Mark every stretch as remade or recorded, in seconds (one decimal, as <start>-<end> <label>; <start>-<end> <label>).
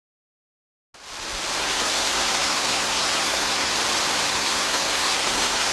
0.0-1.6 recorded; 1.6-3.7 remade; 3.7-4.3 recorded; 4.3-5.7 remade